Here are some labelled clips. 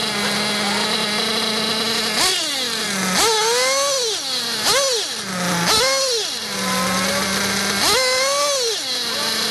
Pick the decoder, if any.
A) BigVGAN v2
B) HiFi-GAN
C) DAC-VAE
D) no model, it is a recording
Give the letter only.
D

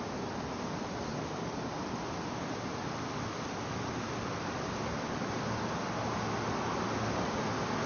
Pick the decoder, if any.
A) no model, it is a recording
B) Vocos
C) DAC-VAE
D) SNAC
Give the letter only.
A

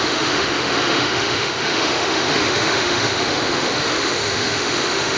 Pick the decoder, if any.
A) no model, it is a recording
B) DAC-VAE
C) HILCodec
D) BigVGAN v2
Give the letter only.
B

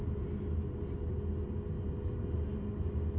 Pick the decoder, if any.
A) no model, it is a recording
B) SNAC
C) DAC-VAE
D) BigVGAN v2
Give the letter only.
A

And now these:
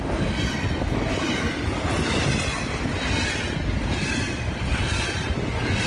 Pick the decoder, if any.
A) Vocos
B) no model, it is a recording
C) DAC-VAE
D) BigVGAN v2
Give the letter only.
B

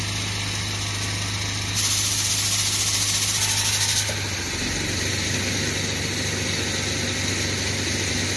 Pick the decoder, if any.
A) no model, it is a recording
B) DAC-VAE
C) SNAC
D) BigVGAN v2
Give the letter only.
A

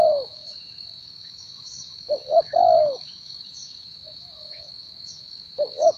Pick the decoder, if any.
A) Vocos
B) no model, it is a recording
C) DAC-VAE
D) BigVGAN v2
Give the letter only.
C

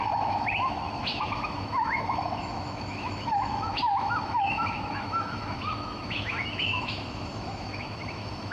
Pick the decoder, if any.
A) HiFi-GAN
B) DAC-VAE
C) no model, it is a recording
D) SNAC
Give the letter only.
B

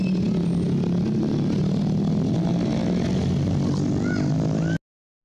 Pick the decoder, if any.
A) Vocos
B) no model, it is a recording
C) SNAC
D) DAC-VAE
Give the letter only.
B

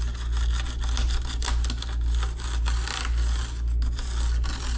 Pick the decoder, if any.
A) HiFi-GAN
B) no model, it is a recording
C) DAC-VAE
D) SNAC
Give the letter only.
B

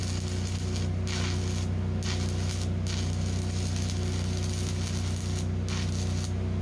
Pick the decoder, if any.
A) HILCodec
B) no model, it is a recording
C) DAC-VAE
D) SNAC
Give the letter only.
B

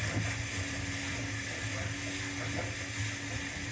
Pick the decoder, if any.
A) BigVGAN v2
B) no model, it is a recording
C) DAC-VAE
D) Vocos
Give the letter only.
B